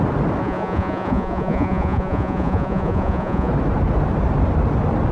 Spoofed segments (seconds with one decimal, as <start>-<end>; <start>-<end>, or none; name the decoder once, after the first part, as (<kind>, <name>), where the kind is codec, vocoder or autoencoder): 0.4-3.5 (vocoder, Vocos)